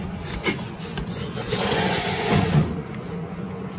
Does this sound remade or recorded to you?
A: remade